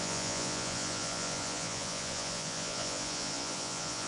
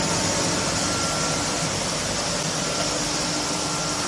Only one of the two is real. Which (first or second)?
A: second